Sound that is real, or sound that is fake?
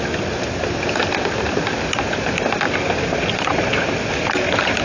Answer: real